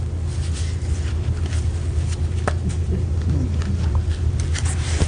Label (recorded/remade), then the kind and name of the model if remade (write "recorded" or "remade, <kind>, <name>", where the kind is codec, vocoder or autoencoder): recorded